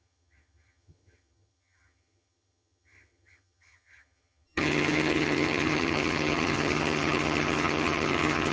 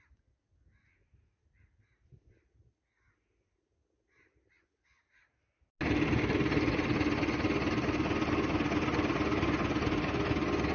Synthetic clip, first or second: first